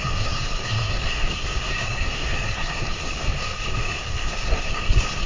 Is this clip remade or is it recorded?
remade